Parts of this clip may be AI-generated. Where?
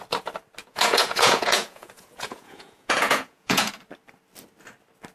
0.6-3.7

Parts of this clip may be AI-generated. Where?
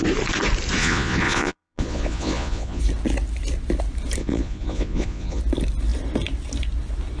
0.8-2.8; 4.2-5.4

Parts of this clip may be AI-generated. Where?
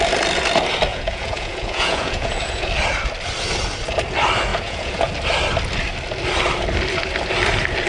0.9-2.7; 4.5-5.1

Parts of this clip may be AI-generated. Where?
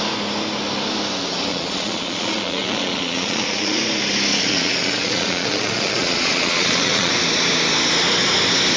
1.5-3.8; 4.3-7.1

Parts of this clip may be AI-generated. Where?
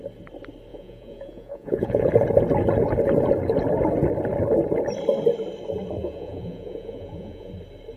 0.7-2.1; 6.0-7.5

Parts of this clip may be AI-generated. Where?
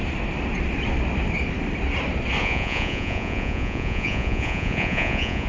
2.4-5.5